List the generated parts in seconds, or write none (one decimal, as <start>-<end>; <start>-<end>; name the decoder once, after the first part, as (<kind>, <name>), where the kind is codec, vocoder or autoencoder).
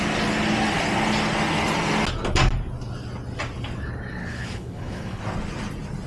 4.2-5.2 (codec, HILCodec)